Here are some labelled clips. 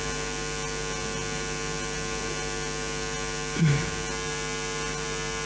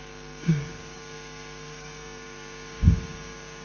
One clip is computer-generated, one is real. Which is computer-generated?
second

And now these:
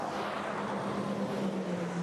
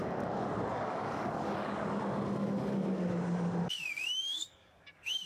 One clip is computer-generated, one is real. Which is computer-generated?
second